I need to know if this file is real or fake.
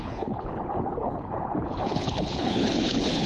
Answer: fake